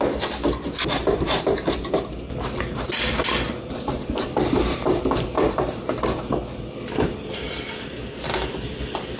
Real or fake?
fake